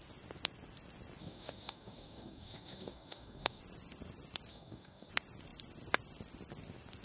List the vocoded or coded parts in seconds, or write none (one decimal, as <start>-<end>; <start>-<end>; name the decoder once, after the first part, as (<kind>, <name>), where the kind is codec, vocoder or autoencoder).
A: 1.2-3.6 (codec, DAC); 4.5-5.1

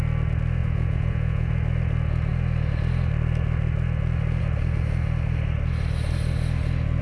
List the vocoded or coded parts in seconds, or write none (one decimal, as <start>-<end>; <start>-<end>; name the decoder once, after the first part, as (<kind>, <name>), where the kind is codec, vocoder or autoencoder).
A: 0.6-1.5 (vocoder, Vocos)

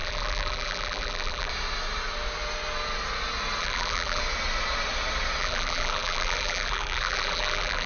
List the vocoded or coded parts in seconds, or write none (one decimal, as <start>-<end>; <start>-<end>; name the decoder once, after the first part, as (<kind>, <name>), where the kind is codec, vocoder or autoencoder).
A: 0.0-1.5 (vocoder, BigVGAN v2); 3.6-4.2; 5.4-7.9

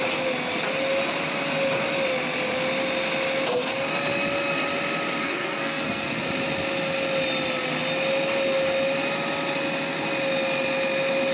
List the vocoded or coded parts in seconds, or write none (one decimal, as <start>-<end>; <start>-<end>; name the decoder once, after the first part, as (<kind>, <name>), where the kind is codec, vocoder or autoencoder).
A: 5.2-6.2 (codec, SNAC)

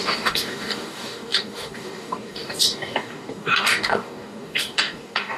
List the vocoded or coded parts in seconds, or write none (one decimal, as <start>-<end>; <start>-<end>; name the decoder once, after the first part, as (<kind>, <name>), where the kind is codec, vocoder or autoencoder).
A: 0.0-5.4 (codec, DAC)